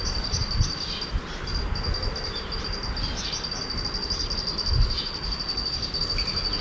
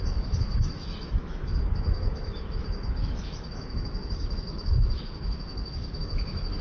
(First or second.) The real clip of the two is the first